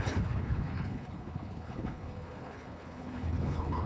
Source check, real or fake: fake